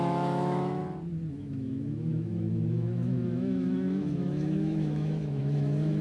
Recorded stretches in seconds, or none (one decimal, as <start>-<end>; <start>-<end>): 0.8-1.3